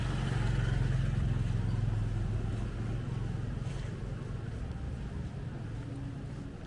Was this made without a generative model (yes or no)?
yes